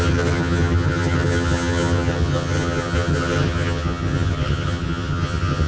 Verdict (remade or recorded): remade